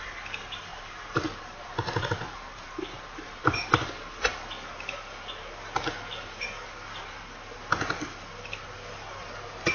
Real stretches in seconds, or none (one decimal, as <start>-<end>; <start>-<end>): 4.3-9.2